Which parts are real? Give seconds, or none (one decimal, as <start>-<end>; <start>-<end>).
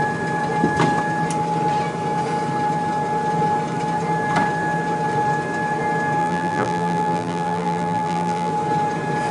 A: 0.0-6.2; 8.5-9.3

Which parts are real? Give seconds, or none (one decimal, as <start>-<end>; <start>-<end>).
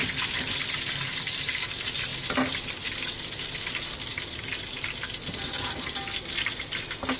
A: 0.0-7.2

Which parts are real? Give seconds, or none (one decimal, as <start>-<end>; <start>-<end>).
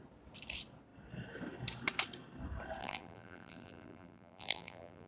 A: 0.0-2.8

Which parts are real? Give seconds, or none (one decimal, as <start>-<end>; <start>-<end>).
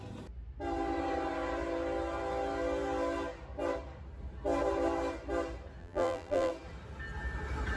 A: 0.0-5.8; 6.5-7.8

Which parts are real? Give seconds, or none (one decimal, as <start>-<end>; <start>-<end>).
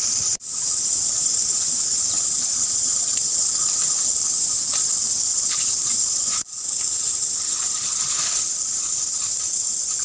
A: 0.0-8.5; 9.1-10.0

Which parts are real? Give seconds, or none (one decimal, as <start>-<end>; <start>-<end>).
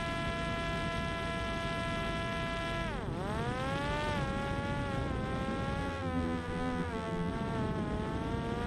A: 0.0-5.8; 7.3-8.7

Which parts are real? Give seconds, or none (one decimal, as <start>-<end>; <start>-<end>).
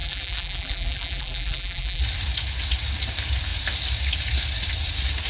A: 2.0-5.3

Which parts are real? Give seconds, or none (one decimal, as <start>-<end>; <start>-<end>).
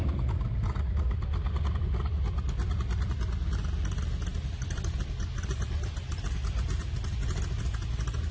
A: 0.0-4.3; 7.7-8.3